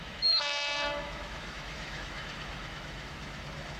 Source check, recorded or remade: remade